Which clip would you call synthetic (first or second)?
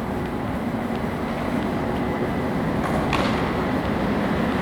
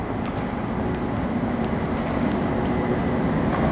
first